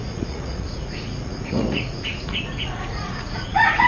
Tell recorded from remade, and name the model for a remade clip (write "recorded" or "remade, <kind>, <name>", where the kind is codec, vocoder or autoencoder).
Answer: remade, vocoder, Vocos